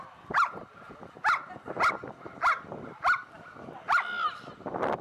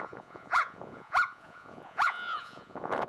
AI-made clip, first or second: second